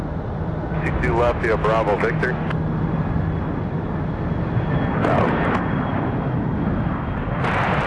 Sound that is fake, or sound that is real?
real